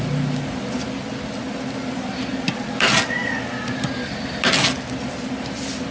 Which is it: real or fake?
real